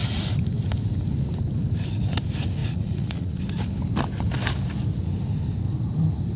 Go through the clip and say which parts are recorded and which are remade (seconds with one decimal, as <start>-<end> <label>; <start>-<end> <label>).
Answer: 0.0-2.6 recorded; 2.6-3.4 remade; 3.4-6.4 recorded